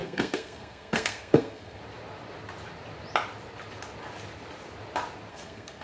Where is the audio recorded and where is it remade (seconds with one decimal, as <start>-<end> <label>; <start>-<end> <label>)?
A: 0.0-1.8 remade; 1.8-5.3 recorded; 5.3-5.8 remade